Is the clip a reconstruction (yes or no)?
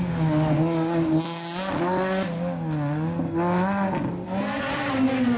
no